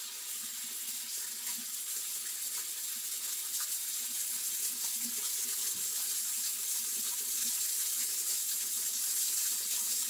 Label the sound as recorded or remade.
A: recorded